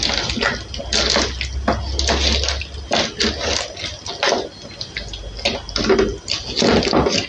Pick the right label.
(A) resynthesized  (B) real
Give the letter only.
B